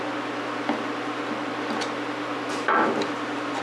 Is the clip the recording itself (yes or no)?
yes